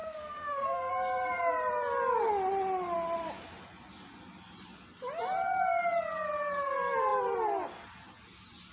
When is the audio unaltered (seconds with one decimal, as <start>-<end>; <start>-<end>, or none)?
0.9-8.7